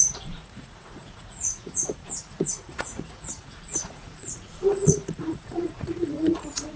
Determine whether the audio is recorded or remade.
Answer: remade